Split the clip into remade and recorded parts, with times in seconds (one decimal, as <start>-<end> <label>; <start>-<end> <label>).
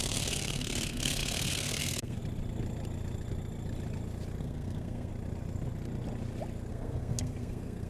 0.0-2.2 remade; 2.2-4.4 recorded; 4.4-5.1 remade; 5.1-6.7 recorded; 6.7-7.9 remade